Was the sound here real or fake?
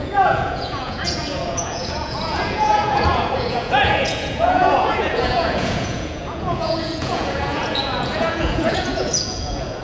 fake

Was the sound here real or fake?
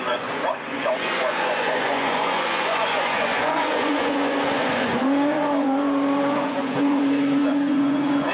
fake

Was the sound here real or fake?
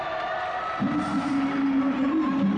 real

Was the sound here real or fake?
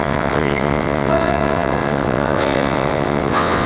fake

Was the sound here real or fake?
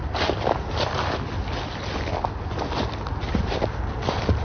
real